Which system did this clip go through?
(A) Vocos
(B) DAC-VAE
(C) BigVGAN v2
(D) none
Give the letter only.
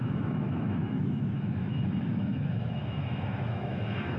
B